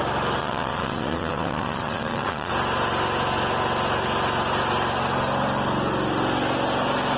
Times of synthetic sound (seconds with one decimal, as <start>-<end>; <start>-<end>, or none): 0.4-2.5